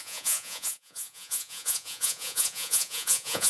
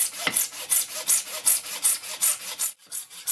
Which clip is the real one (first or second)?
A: second